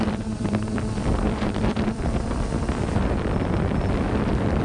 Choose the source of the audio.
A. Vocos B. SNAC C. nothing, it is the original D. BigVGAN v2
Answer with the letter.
D